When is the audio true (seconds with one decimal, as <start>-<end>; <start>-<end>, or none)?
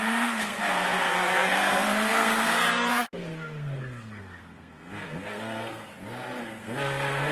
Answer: 5.9-6.4